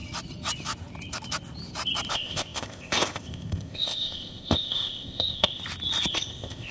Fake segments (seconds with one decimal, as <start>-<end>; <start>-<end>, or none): 2.1-5.6; 6.1-6.7